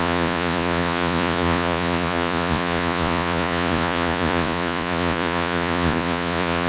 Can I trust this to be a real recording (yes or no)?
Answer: no